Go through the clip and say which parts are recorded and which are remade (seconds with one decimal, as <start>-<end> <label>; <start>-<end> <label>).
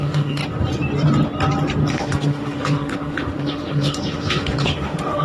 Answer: 0.0-0.4 remade; 0.4-1.9 recorded; 1.9-5.2 remade